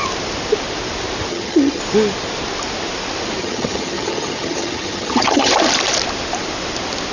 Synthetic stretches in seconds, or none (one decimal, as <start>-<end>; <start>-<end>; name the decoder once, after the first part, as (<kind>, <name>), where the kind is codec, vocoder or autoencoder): 1.3-1.8 (vocoder, HiFi-GAN); 3.4-5.5